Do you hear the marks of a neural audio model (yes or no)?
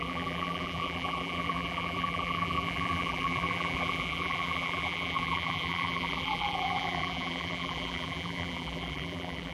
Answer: yes